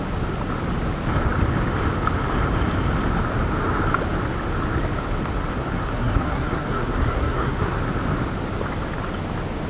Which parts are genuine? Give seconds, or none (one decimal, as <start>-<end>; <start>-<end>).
0.0-5.5; 7.8-9.7